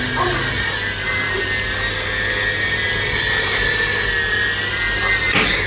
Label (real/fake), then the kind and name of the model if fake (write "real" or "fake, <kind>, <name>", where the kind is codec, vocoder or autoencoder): real